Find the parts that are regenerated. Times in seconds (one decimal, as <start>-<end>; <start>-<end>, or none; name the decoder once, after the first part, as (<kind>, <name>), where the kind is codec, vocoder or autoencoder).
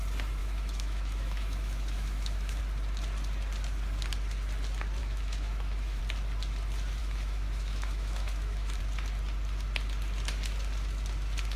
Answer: 0.4-2.6 (autoencoder, DAC-VAE); 5.0-6.0; 7.0-8.8